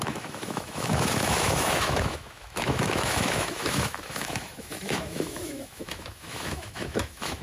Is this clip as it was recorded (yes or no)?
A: no